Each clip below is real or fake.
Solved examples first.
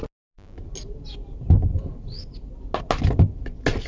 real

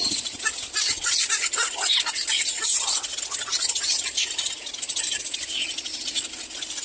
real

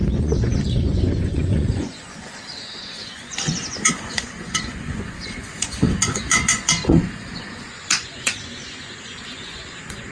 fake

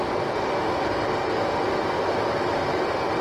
real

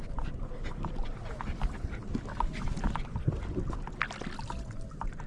real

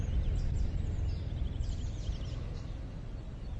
real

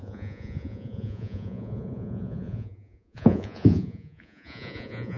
fake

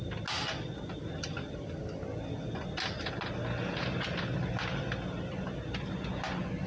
real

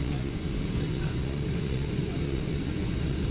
fake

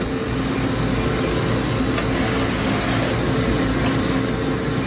real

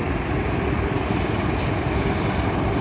real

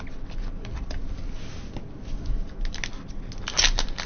real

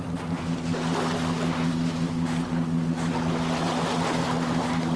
real